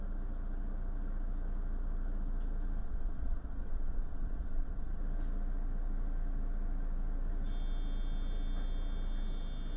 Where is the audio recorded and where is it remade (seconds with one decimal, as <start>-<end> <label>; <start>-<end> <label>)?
0.0-2.8 recorded; 2.8-5.0 remade; 5.0-9.8 recorded